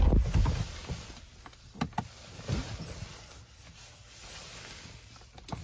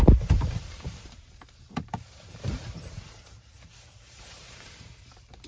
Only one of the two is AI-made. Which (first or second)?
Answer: second